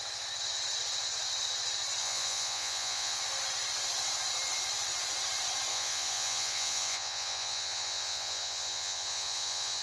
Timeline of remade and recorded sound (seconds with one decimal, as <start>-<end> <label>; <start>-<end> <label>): 0.0-2.0 recorded; 2.0-3.2 remade; 3.2-5.7 recorded; 5.7-9.8 remade